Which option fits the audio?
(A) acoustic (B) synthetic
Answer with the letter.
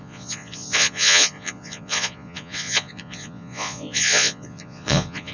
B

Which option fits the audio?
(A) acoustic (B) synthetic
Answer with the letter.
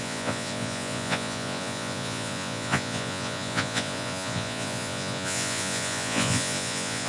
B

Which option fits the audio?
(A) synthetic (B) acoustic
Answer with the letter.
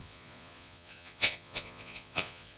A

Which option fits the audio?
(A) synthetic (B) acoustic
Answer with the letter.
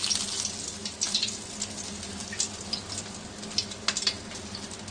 B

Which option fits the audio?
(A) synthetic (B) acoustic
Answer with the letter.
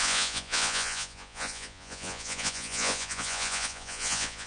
A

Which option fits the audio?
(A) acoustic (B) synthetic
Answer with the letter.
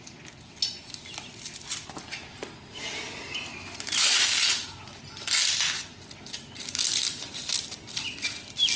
A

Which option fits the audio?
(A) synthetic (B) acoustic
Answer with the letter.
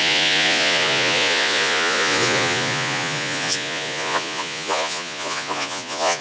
A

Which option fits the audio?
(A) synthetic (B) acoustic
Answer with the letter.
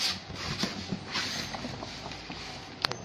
B